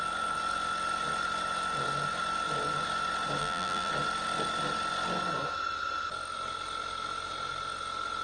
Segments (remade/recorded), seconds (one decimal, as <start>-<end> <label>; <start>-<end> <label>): 0.0-3.4 recorded; 3.4-3.9 remade; 3.9-8.2 recorded